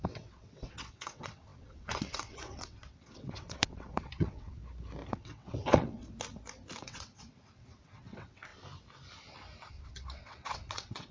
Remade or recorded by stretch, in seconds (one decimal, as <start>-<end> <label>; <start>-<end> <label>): 0.0-4.6 remade; 4.6-5.1 recorded; 5.1-6.0 remade; 6.0-6.8 recorded; 6.8-8.5 remade; 8.5-9.7 recorded; 9.7-11.1 remade